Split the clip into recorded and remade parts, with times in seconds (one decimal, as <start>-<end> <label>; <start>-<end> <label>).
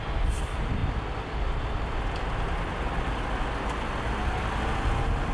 0.0-5.3 recorded